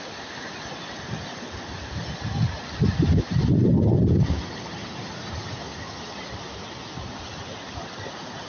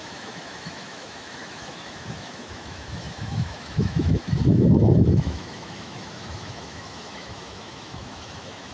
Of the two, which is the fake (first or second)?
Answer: second